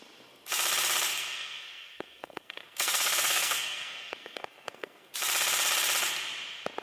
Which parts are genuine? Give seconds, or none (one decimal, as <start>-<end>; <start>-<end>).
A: 0.0-1.1; 5.1-6.8

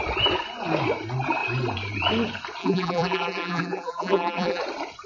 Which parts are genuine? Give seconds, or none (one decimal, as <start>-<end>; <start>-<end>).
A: 0.0-2.6; 4.6-5.1

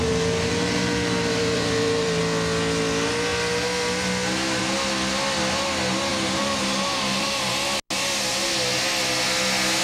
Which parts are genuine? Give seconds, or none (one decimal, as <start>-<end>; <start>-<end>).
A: 0.0-0.5; 2.2-6.1; 7.5-9.8

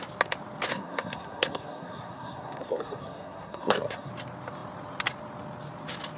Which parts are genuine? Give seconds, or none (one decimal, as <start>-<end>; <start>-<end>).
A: 0.0-0.7; 4.1-6.2